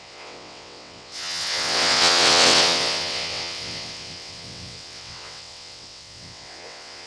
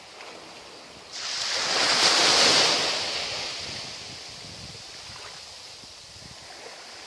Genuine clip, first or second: second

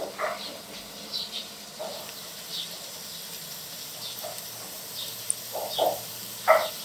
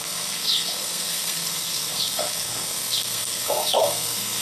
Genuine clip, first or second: first